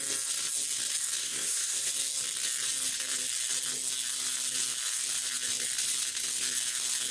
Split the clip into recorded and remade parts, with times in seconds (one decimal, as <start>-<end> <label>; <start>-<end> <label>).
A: 0.0-1.2 recorded; 1.2-1.9 remade; 1.9-7.1 recorded